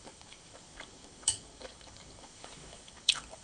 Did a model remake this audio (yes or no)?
yes